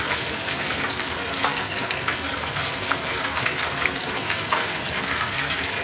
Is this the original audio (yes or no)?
no